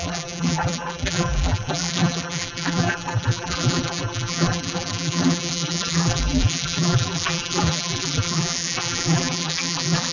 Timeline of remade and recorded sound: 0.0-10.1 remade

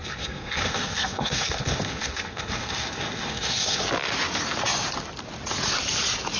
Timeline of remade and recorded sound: 0.0-3.8 remade; 3.8-6.4 recorded